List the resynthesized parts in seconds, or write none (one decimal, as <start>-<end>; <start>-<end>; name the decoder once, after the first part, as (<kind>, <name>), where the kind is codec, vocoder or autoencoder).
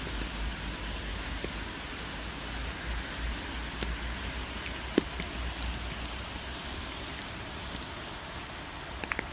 none